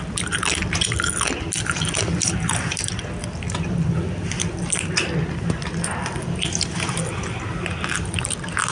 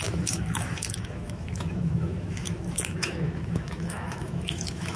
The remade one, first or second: second